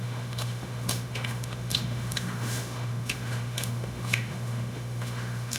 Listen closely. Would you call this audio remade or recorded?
remade